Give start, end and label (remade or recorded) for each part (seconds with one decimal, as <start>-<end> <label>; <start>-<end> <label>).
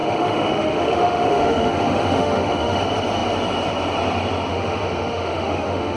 0.0-2.8 remade; 2.8-4.5 recorded; 4.5-6.0 remade